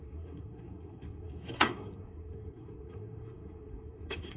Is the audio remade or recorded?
remade